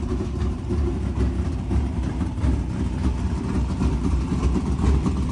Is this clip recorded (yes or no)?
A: no